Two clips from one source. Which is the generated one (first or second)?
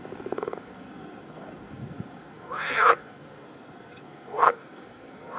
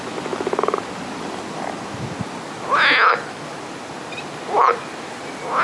first